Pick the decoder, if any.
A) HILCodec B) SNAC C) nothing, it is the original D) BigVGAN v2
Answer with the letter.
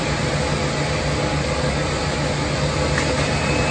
C